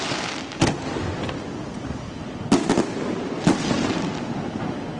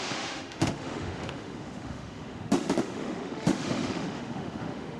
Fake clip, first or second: second